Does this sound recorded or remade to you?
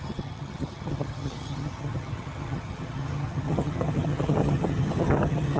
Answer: remade